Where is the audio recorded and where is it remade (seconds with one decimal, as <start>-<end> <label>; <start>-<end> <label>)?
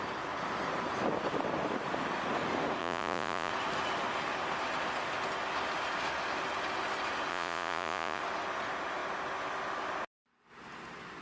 0.0-2.8 recorded; 2.8-3.5 remade; 3.5-7.3 recorded; 7.3-8.2 remade; 8.2-11.2 recorded